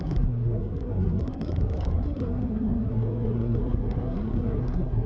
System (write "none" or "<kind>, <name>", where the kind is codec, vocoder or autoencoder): codec, SNAC